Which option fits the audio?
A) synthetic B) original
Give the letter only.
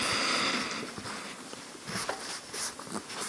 B